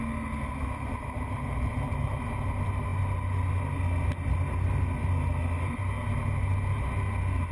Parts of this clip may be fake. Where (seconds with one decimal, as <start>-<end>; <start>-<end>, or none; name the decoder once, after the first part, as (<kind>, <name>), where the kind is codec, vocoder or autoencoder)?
none